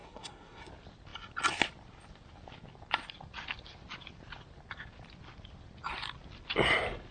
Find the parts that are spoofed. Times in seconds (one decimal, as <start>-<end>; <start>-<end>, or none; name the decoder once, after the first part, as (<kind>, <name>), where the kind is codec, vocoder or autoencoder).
0.0-0.7 (codec, SNAC)